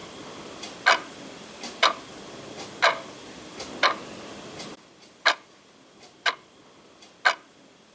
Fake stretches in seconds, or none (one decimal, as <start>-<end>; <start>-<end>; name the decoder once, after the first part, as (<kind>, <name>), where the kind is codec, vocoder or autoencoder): none

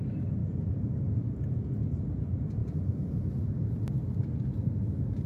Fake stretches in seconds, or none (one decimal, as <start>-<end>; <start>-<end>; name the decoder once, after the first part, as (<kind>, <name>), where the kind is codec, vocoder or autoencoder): 0.4-1.0 (vocoder, BigVGAN v2); 2.6-3.2

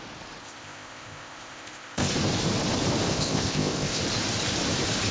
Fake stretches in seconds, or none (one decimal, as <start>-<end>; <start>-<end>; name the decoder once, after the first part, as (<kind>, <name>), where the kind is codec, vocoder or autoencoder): 0.4-2.1 (codec, ZipCodec); 3.1-4.0

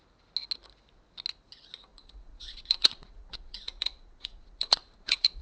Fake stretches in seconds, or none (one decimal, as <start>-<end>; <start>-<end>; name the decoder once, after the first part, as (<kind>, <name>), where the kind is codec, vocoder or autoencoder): 1.9-5.4 (vocoder, Vocos)